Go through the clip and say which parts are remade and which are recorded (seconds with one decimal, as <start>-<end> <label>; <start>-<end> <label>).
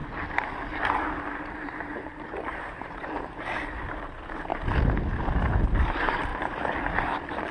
0.0-1.4 recorded; 1.4-4.5 remade; 4.5-5.8 recorded; 5.8-6.3 remade; 6.3-7.0 recorded; 7.0-7.5 remade